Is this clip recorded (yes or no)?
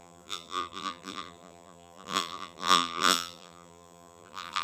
no